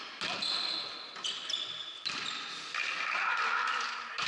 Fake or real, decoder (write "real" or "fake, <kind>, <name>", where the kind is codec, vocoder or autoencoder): real